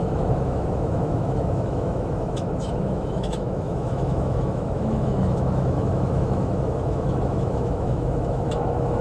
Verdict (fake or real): fake